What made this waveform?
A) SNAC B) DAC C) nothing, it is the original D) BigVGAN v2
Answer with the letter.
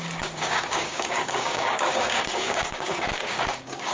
B